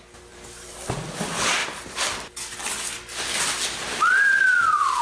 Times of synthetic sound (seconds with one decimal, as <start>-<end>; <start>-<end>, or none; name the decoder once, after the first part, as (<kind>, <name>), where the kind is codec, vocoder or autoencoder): none